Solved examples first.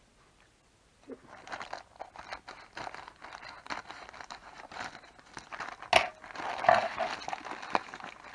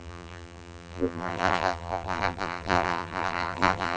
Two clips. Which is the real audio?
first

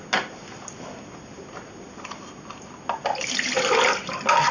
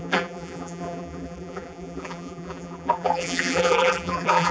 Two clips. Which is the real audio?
first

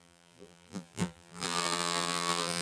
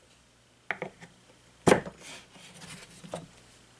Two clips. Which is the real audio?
second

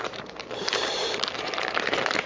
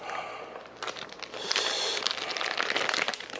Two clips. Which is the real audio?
second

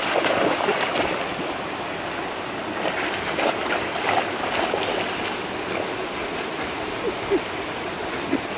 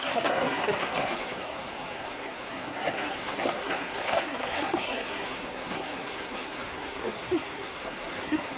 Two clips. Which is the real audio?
first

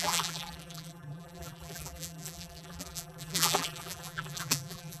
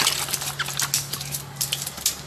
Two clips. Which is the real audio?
second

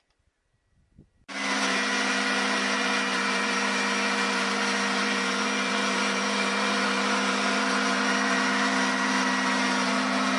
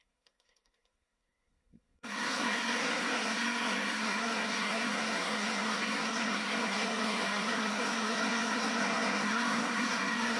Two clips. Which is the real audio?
first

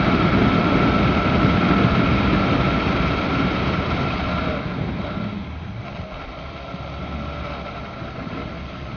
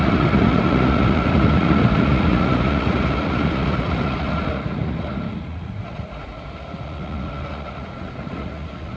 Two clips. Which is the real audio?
first